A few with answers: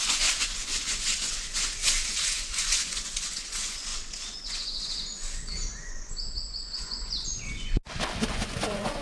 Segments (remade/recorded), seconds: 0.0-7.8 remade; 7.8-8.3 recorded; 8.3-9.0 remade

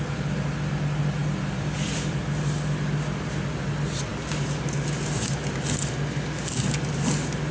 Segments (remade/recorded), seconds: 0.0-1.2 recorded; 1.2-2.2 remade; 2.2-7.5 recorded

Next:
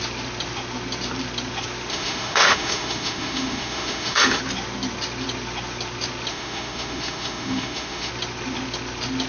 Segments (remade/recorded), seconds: 0.0-1.9 recorded; 1.9-4.4 remade; 4.4-6.3 recorded; 6.3-8.1 remade; 8.1-9.3 recorded

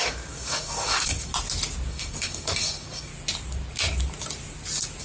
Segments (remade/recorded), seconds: 0.0-1.3 remade; 1.3-1.9 recorded; 1.9-3.1 remade; 3.1-5.0 recorded